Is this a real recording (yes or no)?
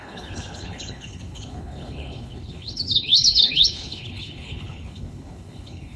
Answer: no